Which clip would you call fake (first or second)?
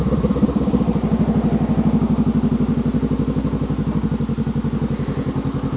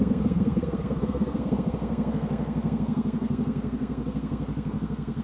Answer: second